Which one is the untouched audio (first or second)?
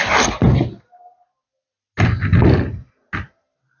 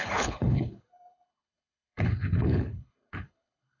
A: first